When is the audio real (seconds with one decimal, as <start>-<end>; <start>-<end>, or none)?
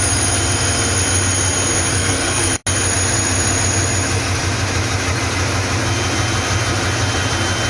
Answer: 0.0-1.9; 2.5-7.7